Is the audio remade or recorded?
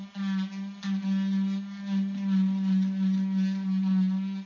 recorded